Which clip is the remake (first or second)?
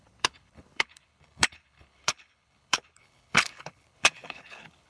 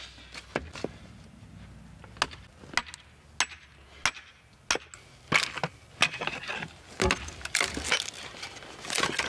first